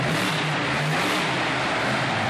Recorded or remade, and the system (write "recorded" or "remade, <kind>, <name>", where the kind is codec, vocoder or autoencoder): recorded